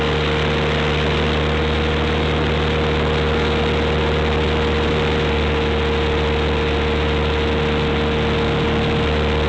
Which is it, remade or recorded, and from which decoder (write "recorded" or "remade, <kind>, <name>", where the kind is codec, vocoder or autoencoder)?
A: recorded